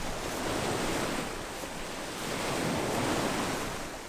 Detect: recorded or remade recorded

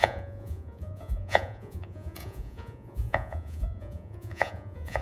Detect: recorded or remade remade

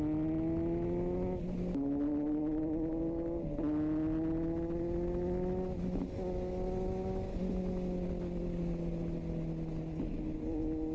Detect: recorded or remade recorded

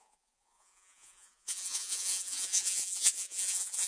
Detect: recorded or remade remade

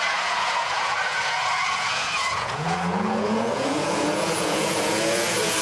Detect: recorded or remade remade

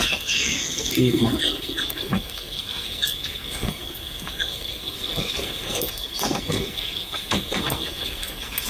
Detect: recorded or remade remade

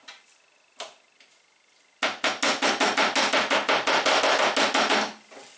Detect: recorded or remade recorded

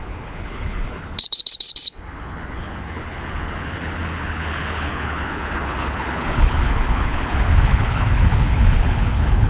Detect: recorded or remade remade